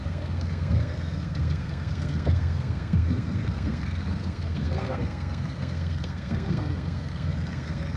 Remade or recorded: remade